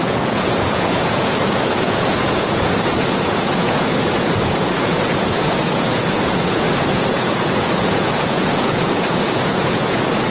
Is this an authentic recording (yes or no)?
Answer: no